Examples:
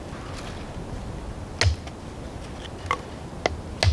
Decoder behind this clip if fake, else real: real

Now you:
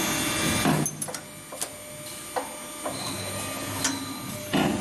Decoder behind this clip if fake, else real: real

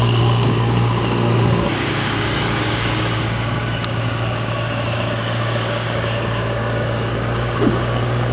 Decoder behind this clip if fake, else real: fake, codec, DAC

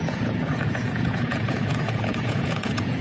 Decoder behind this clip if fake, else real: fake, vocoder, Vocos